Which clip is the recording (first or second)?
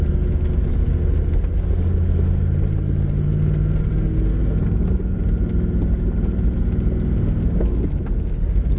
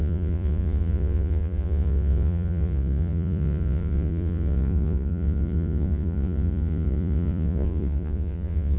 first